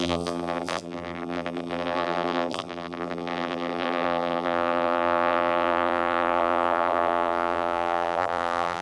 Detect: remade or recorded remade